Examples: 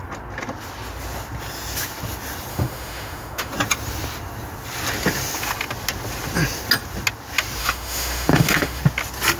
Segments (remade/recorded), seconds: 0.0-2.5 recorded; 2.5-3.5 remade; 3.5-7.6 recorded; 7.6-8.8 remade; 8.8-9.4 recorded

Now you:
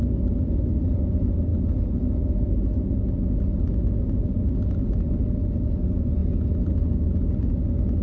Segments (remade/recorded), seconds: 0.0-8.0 recorded

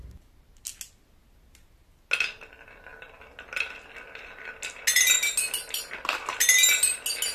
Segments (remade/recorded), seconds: 0.0-7.3 recorded

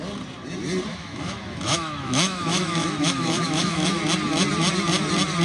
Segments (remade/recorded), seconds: 0.0-0.9 recorded; 0.9-4.0 remade; 4.0-5.4 recorded